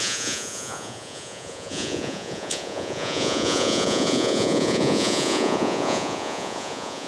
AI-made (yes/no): yes